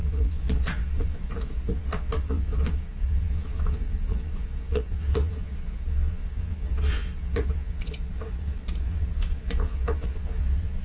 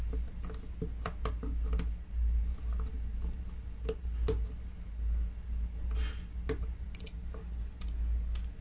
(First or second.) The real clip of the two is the second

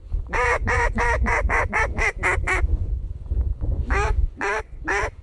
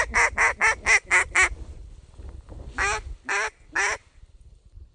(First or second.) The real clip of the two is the second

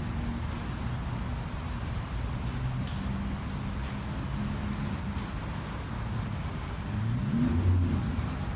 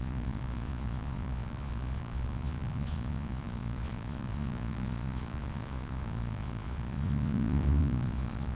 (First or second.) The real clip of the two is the first